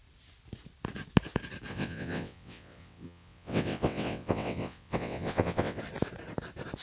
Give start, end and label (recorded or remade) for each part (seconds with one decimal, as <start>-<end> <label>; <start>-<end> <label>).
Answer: 0.0-1.7 recorded; 1.7-5.8 remade; 5.8-6.8 recorded

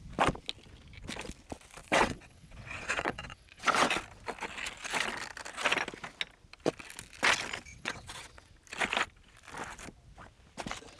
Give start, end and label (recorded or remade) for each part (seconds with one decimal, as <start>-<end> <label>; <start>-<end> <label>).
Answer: 0.0-1.8 recorded; 1.8-3.9 remade; 3.9-7.7 recorded; 7.7-8.5 remade; 8.5-11.0 recorded